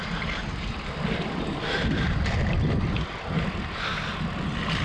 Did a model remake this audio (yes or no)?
no